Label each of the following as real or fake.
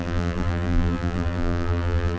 fake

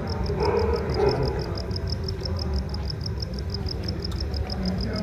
real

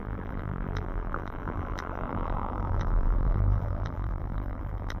fake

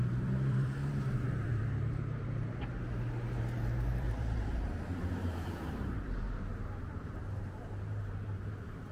fake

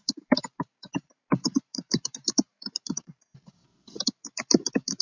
fake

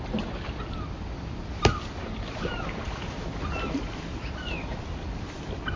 fake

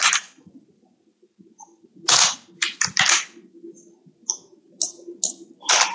real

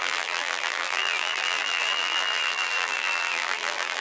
fake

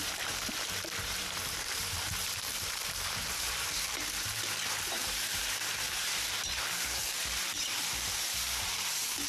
fake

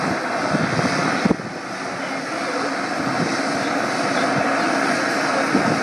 real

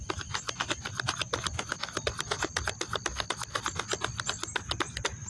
real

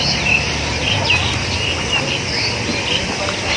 real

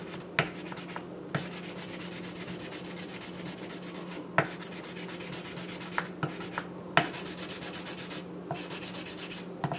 real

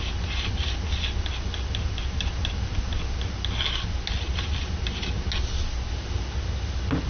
real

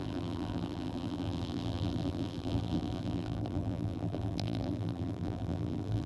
fake